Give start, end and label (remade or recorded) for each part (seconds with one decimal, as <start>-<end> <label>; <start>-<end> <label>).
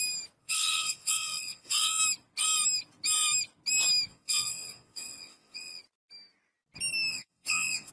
0.0-0.4 recorded; 0.4-2.0 remade; 2.0-4.1 recorded; 4.1-5.8 remade; 5.8-7.1 recorded; 7.1-7.9 remade